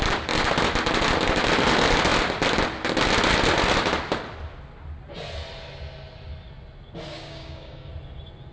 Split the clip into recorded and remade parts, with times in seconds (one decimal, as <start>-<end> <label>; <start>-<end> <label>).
0.0-7.1 recorded; 7.1-7.9 remade; 7.9-8.5 recorded